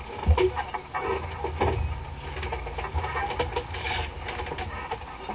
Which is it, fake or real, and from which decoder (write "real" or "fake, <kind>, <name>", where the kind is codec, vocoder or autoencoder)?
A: real